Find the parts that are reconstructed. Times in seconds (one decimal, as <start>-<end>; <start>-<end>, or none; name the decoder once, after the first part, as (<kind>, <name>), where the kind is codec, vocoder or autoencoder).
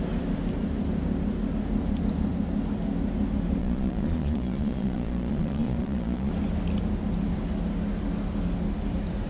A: 3.6-6.3 (vocoder, Vocos)